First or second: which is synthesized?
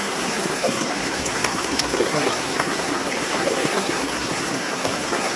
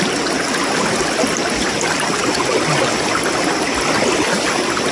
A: first